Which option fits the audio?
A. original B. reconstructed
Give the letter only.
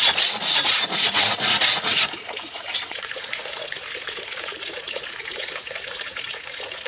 B